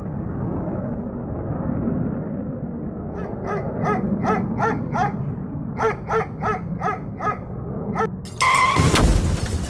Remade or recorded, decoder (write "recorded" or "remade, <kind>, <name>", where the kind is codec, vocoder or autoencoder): recorded